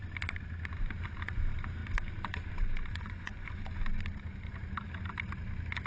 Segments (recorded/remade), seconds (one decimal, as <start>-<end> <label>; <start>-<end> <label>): 0.0-2.9 recorded; 2.9-3.6 remade; 3.6-5.9 recorded